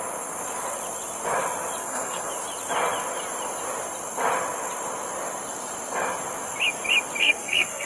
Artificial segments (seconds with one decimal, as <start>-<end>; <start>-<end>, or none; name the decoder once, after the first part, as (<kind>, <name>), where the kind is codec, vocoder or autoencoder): 1.8-2.3 (codec, SNAC); 7.2-7.9